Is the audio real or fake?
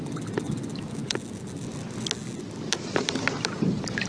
real